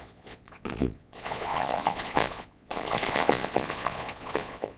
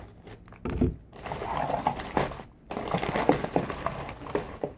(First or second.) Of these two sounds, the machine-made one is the first